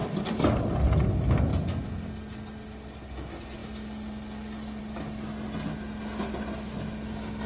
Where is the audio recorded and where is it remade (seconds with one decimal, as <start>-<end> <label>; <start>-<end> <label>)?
0.0-0.7 remade; 0.7-1.5 recorded; 1.5-2.1 remade; 2.1-3.6 recorded; 3.6-4.8 remade; 4.8-7.5 recorded